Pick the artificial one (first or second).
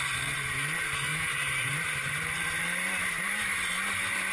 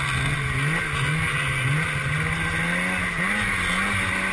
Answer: first